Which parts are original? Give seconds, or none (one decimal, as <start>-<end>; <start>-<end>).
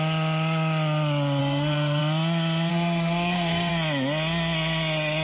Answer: 0.0-1.4; 2.0-2.7; 3.7-5.2